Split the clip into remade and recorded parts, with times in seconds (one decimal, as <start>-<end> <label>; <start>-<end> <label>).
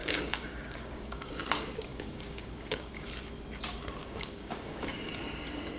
0.0-1.3 remade; 1.3-1.9 recorded; 1.9-3.1 remade; 3.1-4.0 recorded; 4.0-5.1 remade; 5.1-5.8 recorded